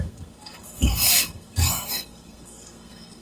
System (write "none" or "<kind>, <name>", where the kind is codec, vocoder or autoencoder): codec, SNAC